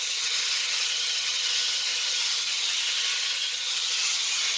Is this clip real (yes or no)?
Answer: no